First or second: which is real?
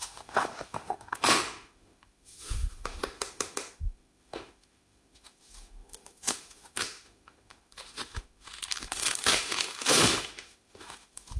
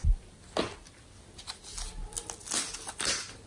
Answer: second